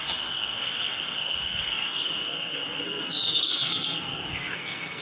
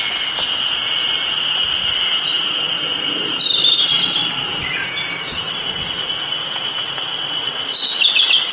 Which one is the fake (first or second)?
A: first